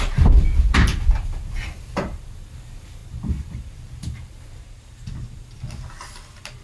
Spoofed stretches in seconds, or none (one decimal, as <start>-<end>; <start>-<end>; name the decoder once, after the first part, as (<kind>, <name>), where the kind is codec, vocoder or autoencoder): 0.9-1.6 (vocoder, BigVGAN v2); 3.0-4.8